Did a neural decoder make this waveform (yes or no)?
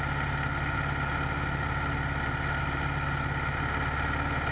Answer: no